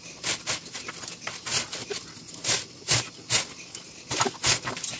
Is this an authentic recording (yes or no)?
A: yes